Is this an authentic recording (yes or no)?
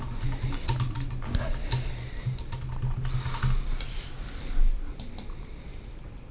yes